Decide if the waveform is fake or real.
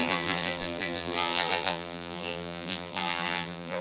fake